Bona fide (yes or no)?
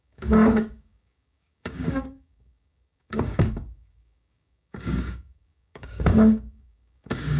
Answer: no